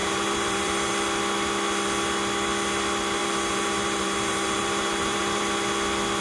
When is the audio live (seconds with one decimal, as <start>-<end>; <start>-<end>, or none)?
0.9-3.2; 5.4-6.2